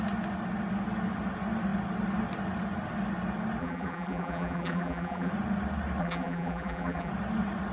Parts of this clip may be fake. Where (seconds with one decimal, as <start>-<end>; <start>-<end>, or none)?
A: 3.6-5.3; 6.0-7.1